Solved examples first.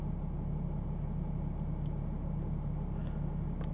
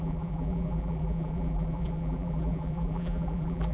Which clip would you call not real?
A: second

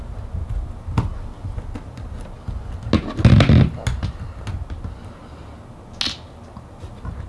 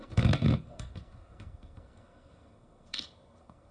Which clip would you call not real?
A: second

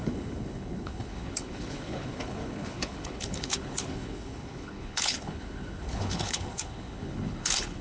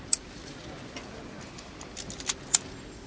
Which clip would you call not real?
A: first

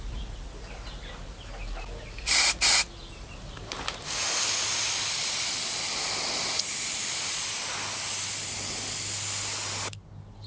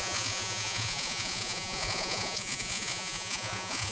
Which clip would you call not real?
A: second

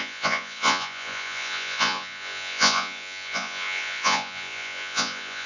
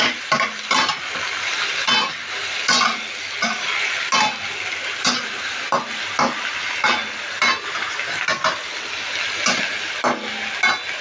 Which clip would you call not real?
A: first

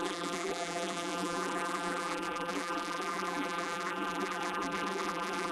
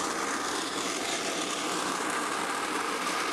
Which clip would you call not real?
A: first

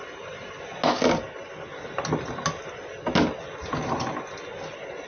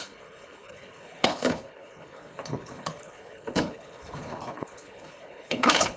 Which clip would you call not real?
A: second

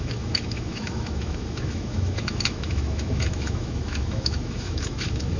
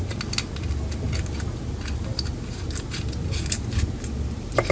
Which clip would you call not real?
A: first